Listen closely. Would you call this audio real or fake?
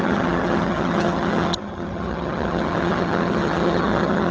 fake